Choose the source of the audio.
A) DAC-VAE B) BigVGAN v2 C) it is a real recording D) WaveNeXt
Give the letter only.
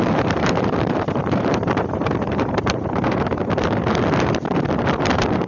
B